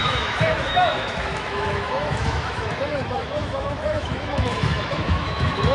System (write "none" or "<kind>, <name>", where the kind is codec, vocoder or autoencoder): autoencoder, DAC-VAE